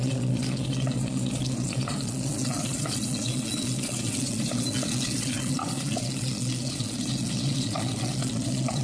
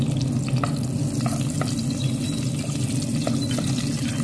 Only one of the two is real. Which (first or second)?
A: second